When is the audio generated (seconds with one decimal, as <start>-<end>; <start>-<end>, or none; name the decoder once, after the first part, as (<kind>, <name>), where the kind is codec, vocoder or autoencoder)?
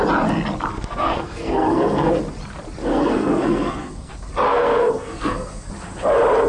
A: 0.7-2.2 (codec, SNAC); 2.8-4.1; 4.5-5.7